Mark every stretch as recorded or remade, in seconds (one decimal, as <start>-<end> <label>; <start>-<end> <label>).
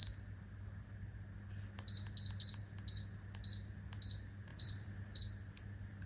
0.0-4.5 recorded; 4.5-5.2 remade; 5.2-6.1 recorded